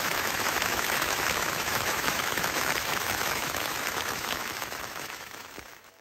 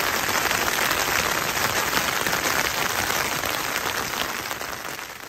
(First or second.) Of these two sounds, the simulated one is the first